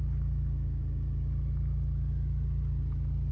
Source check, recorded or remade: recorded